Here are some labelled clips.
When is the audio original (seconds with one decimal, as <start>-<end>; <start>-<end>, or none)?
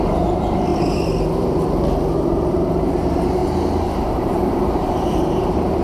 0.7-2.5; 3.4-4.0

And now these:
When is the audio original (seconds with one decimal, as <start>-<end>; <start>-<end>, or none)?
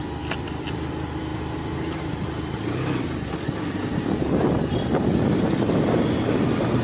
0.0-6.8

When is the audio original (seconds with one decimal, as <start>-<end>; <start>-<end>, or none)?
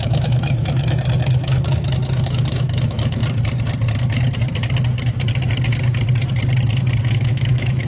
3.2-7.0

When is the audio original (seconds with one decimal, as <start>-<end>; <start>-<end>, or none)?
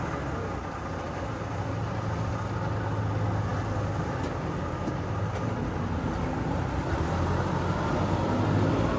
0.0-9.0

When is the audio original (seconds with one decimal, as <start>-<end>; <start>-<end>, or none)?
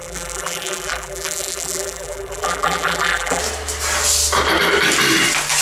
3.4-5.6